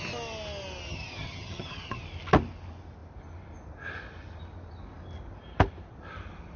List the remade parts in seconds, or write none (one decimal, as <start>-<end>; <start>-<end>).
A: 0.9-2.0